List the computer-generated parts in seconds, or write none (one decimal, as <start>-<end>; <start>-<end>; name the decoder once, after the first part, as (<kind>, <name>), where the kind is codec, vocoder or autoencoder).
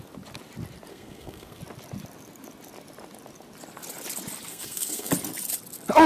0.9-1.6 (codec, SNAC); 4.5-5.1